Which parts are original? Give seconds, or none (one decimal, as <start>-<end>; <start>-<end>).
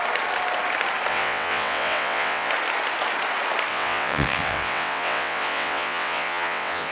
0.0-1.1; 2.5-3.7